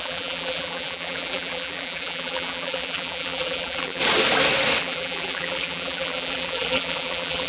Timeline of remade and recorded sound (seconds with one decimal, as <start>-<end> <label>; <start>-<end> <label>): 0.0-4.0 remade; 4.0-4.8 recorded; 4.8-7.5 remade

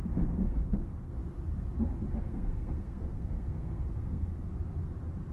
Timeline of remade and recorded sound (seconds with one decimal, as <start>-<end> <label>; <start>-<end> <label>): 0.0-1.2 remade; 1.2-2.2 recorded; 2.2-4.3 remade; 4.3-5.3 recorded

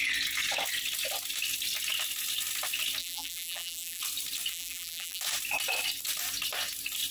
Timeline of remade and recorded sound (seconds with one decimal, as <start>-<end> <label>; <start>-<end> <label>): 0.0-3.0 recorded; 3.0-4.0 remade; 4.0-4.5 recorded; 4.5-5.2 remade; 5.2-7.1 recorded

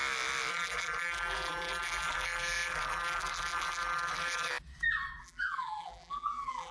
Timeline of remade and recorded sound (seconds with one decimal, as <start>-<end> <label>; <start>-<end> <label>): 0.0-0.5 recorded; 0.5-4.5 remade; 4.5-5.2 recorded; 5.2-6.7 remade

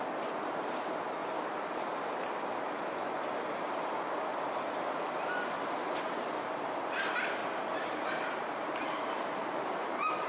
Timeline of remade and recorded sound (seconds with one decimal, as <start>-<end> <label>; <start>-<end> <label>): 0.0-1.2 recorded; 1.2-3.9 remade; 3.9-7.4 recorded; 7.4-10.3 remade

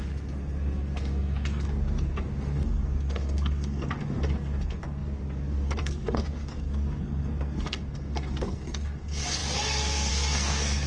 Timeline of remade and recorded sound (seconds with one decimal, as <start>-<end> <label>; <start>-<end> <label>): 0.0-10.9 remade

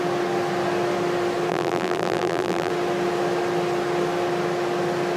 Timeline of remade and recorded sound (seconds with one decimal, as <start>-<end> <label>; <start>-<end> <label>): 0.0-1.5 recorded; 1.5-2.7 remade; 2.7-5.2 recorded

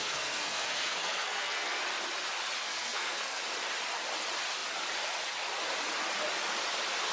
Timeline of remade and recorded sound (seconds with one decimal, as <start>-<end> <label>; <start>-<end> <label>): 0.0-1.8 remade; 1.8-2.6 recorded; 2.6-3.4 remade; 3.4-7.1 recorded